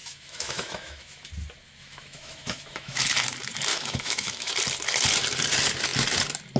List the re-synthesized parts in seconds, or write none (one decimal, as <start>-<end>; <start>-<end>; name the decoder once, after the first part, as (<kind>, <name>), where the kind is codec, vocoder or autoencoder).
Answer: 0.0-1.3 (autoencoder, DAC-VAE); 1.8-3.0; 3.7-4.5